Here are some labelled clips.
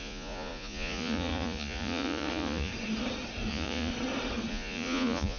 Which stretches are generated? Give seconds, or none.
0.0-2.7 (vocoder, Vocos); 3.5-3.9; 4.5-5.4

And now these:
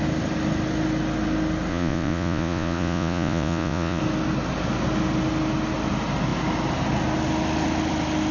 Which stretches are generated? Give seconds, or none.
1.7-4.0 (vocoder, Vocos)

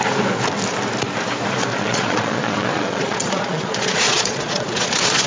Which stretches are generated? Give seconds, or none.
1.7-5.3 (vocoder, Vocos)

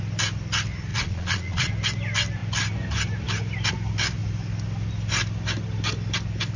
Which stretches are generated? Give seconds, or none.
0.9-1.7 (vocoder, Vocos)